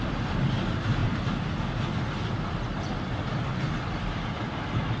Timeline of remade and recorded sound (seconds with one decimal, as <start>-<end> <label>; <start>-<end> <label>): 0.0-5.0 recorded